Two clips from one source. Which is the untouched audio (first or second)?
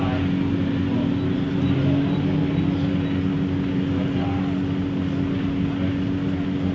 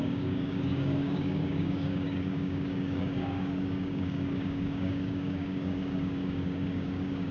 first